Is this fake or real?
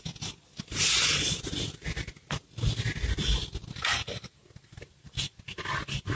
real